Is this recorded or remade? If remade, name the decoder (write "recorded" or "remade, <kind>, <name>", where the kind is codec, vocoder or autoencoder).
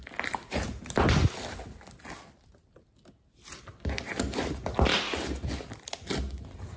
recorded